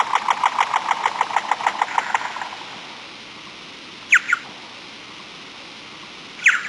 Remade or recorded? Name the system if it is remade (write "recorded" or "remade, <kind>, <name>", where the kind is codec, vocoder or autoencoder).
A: recorded